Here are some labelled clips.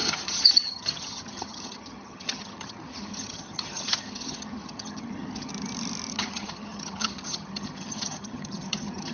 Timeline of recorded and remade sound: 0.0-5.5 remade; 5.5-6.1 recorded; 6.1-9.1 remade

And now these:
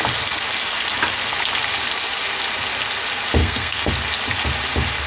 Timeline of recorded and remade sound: 0.0-3.4 recorded; 3.4-3.9 remade; 3.9-5.1 recorded

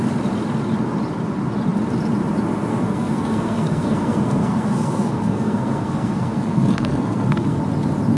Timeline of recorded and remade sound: 0.0-2.7 recorded; 2.7-7.6 remade; 7.6-8.2 recorded

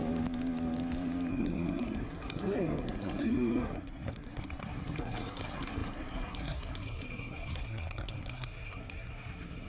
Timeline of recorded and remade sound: 0.0-1.3 recorded; 1.3-9.7 remade

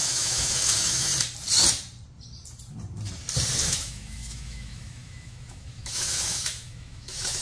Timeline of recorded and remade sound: 0.0-1.1 remade; 1.1-3.6 recorded; 3.6-7.4 remade

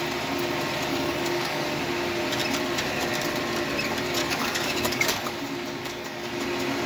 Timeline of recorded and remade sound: 0.0-0.9 recorded; 0.9-1.8 remade; 1.8-4.2 recorded; 4.2-6.3 remade; 6.3-6.9 recorded